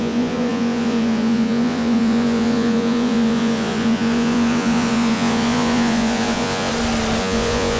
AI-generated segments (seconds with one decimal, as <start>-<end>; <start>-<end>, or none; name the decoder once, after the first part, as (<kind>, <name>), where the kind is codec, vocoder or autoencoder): 0.0-6.7 (vocoder, Vocos); 7.2-7.8